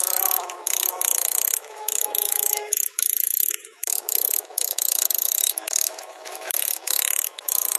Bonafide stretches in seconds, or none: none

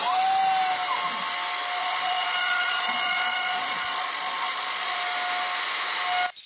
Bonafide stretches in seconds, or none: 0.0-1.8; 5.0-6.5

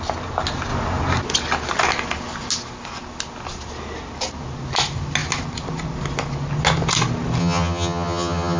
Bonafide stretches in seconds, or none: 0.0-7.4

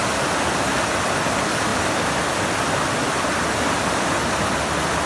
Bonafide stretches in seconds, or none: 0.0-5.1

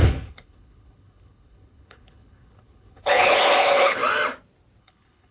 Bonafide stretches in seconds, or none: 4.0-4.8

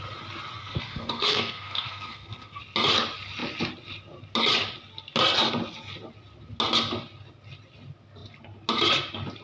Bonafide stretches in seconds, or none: 0.0-0.6; 2.6-9.4